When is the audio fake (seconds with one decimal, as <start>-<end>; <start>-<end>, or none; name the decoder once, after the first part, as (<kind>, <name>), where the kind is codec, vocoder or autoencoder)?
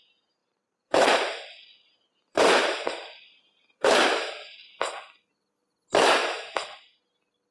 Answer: 0.4-4.8 (vocoder, BigVGAN v2); 6.2-7.0